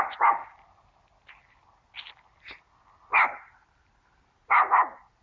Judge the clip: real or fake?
real